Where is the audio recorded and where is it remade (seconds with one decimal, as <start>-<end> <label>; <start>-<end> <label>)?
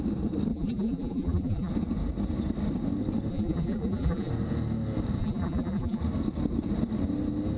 0.0-0.5 recorded; 0.5-1.7 remade; 1.7-3.3 recorded; 3.3-4.3 remade; 4.3-5.2 recorded; 5.2-6.0 remade; 6.0-7.6 recorded